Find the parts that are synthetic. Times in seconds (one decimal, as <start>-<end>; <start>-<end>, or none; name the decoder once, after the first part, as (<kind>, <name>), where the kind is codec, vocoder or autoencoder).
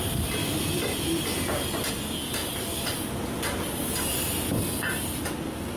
0.4-1.9 (vocoder, BigVGAN v2); 2.4-3.0